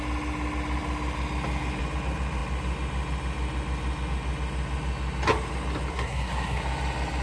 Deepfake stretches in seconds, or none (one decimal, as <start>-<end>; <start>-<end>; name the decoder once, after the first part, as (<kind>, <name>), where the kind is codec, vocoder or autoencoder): 5.9-6.6 (codec, SNAC)